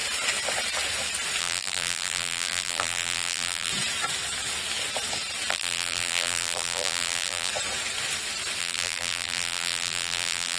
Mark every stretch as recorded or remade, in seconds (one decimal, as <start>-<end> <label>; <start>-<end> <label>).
0.0-1.4 recorded; 1.4-3.7 remade; 3.7-5.5 recorded; 5.5-7.5 remade; 7.5-8.6 recorded; 8.6-10.6 remade